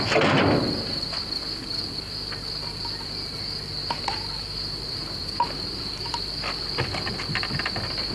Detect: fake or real real